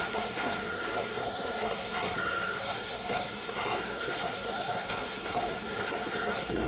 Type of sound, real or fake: fake